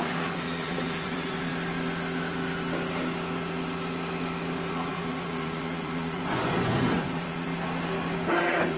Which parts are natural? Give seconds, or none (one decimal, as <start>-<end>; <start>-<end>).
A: 1.5-4.7; 7.5-8.4